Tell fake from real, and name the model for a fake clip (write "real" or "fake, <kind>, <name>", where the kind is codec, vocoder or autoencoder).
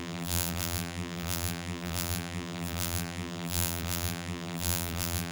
fake, vocoder, BigVGAN v2